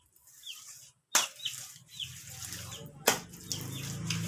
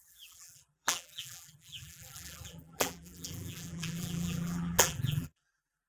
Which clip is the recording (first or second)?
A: first